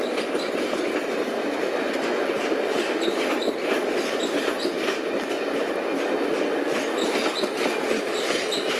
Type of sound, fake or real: real